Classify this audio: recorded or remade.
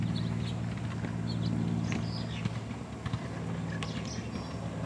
recorded